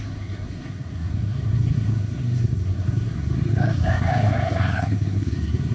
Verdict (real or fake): fake